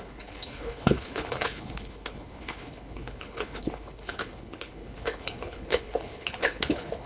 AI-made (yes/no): yes